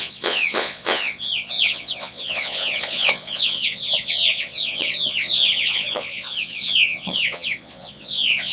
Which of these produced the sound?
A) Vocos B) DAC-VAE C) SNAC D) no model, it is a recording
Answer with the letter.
A